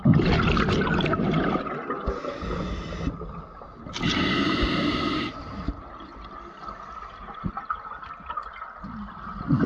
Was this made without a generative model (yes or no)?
yes